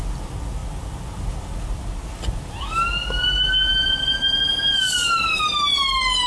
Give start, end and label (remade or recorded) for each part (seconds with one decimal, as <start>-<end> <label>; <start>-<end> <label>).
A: 0.0-0.6 recorded; 0.6-2.7 remade; 2.7-6.3 recorded

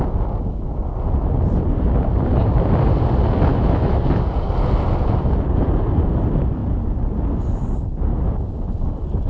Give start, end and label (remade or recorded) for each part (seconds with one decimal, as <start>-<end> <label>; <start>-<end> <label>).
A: 0.0-3.5 recorded; 3.5-4.0 remade; 4.0-9.3 recorded

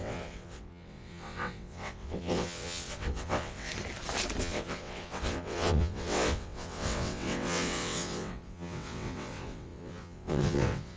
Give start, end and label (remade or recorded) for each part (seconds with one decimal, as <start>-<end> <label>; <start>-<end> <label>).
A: 0.0-3.7 remade; 3.7-4.4 recorded; 4.4-11.0 remade

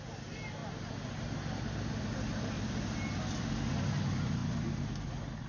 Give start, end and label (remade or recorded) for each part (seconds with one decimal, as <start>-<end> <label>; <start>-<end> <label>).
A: 0.0-5.5 recorded

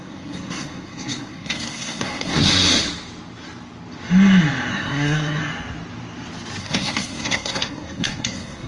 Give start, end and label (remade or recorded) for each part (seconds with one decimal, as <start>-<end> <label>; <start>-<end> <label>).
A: 0.0-2.5 remade; 2.5-4.7 recorded; 4.7-5.4 remade; 5.4-6.6 recorded; 6.6-8.7 remade

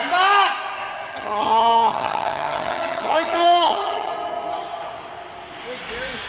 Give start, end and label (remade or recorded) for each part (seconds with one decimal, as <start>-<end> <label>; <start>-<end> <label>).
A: 0.0-1.1 recorded; 1.1-4.1 remade; 4.1-6.3 recorded

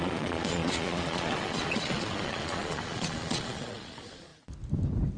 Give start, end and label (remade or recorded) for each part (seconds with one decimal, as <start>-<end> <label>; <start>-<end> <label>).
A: 0.0-4.3 remade; 4.3-5.2 recorded

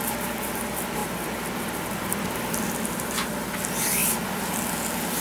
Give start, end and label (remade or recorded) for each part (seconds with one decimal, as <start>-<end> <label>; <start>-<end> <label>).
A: 0.0-5.2 recorded